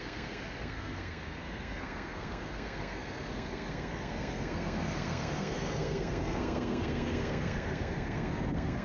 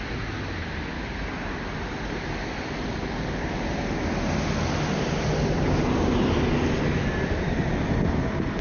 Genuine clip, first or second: second